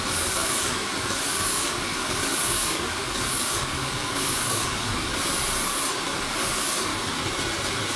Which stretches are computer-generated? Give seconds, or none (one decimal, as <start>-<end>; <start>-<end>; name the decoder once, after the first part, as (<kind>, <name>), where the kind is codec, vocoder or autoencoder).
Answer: 0.0-5.1 (codec, DAC); 6.2-6.9